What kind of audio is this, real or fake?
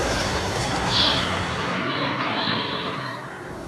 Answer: fake